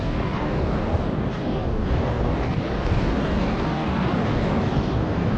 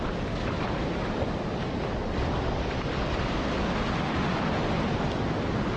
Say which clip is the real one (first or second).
second